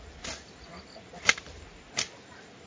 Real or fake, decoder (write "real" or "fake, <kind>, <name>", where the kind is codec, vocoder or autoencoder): real